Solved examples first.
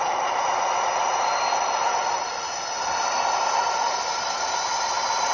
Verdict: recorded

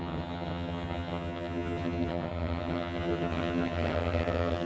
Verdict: remade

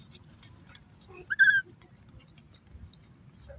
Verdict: recorded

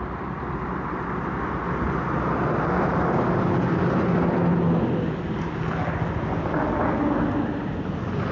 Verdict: recorded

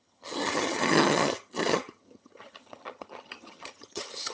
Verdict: remade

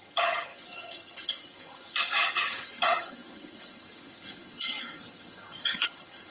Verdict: remade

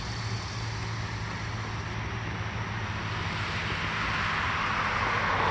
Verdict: recorded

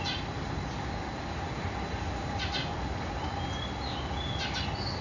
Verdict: recorded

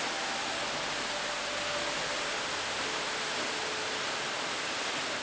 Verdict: recorded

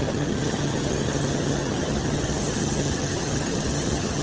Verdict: remade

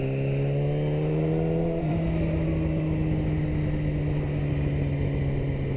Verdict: recorded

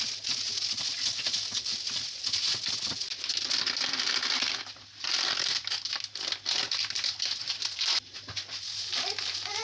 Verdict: recorded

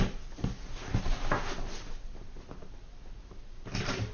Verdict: recorded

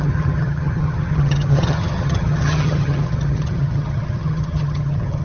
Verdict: remade